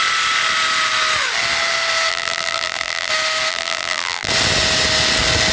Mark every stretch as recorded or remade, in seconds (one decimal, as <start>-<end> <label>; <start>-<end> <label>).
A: 0.0-2.1 recorded; 2.1-3.1 remade; 3.1-3.5 recorded; 3.5-4.3 remade; 4.3-5.5 recorded